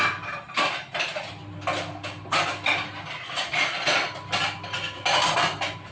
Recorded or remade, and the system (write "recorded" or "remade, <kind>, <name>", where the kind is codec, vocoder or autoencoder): recorded